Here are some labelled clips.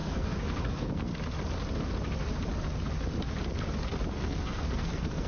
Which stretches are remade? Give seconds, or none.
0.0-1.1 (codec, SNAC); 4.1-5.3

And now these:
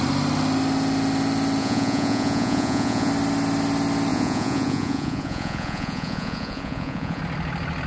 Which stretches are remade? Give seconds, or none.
1.6-3.1 (vocoder, Vocos); 4.1-7.2

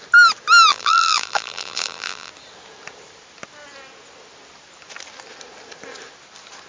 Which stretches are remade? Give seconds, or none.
0.7-2.3 (vocoder, BigVGAN v2)

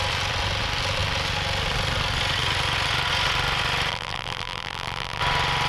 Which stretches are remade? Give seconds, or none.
3.9-5.2 (vocoder, BigVGAN v2)

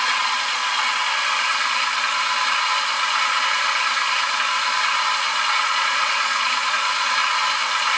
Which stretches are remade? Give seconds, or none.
0.0-0.6 (vocoder, Vocos); 5.4-7.2